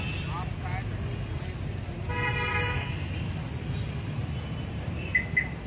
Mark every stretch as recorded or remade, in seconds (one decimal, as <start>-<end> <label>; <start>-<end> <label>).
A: 0.0-2.5 recorded; 2.5-3.1 remade; 3.1-5.7 recorded